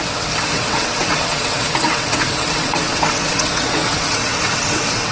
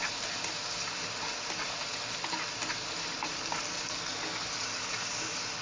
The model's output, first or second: first